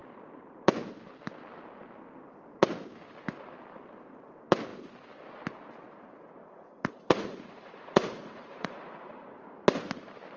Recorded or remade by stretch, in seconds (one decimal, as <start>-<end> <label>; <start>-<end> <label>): 0.0-6.4 recorded; 6.4-9.4 remade; 9.4-10.4 recorded